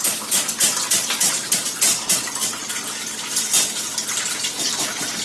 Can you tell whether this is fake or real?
real